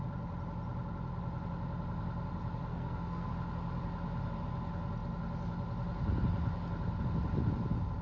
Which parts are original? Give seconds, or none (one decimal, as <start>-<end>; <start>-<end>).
0.0-2.7; 3.3-8.0